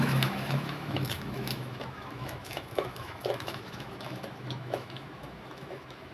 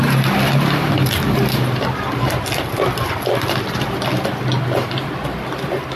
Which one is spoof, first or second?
first